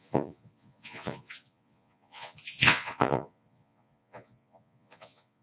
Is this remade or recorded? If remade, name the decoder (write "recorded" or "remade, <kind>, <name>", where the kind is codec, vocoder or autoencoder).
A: remade, vocoder, Vocos